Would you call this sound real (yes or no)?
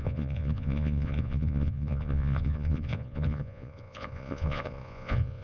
no